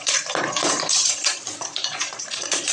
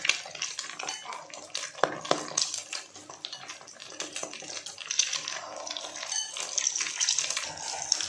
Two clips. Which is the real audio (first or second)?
second